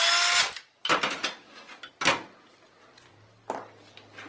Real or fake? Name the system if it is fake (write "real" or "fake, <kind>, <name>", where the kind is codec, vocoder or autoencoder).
real